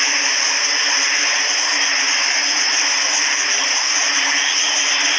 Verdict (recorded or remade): recorded